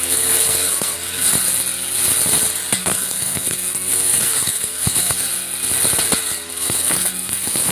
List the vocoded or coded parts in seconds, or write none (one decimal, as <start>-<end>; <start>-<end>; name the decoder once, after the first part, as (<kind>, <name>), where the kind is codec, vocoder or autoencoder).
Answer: 0.0-1.3 (codec, SNAC); 2.8-5.3; 6.5-7.7